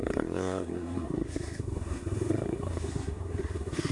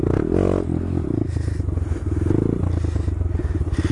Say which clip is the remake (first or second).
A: first